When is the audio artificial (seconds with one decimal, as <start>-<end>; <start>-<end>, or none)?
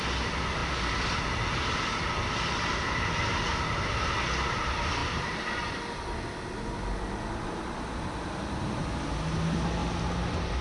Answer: none